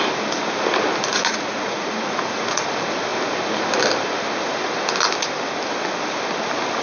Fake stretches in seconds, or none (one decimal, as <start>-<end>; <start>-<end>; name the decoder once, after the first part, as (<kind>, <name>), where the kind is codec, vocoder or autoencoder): 1.1-2.6 (vocoder, Vocos)